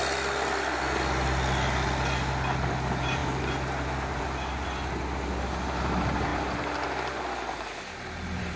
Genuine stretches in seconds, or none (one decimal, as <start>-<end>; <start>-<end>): 0.0-8.6